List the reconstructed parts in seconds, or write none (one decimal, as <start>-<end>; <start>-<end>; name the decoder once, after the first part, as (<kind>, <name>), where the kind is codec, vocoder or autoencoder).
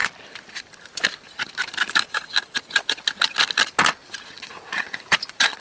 4.0-5.6 (vocoder, Vocos)